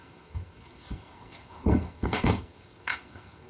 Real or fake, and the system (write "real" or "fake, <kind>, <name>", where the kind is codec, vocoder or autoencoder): fake, codec, SNAC